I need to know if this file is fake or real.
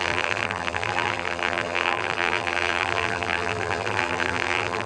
fake